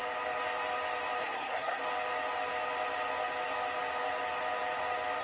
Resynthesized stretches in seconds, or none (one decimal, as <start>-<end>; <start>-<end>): 1.2-1.8